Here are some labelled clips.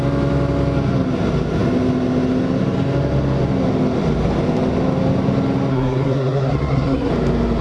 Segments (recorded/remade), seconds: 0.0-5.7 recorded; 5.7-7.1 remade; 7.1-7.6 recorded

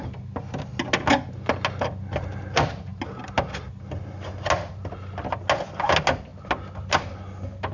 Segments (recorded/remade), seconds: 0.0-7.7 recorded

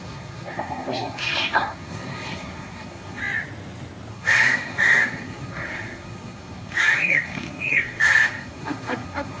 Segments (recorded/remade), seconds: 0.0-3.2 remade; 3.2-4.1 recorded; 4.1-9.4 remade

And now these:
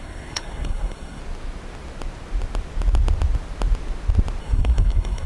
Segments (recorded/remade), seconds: 0.0-1.2 remade; 1.2-4.4 recorded; 4.4-5.3 remade

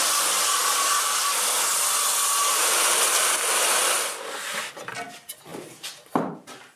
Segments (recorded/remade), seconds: 0.0-6.8 recorded

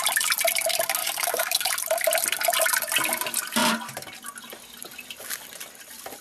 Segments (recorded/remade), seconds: 0.0-1.0 recorded; 1.0-1.7 remade; 1.7-6.2 recorded